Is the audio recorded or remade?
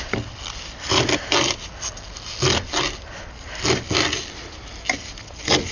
recorded